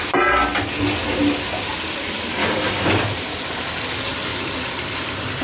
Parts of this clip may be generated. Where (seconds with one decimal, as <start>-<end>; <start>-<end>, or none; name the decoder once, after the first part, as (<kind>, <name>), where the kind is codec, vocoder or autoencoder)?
2.4-2.9 (codec, DAC)